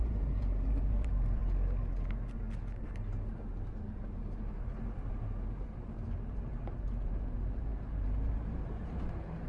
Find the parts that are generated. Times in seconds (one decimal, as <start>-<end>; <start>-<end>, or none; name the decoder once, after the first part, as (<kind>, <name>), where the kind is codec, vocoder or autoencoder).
0.0-1.4 (vocoder, BigVGAN v2); 6.3-9.5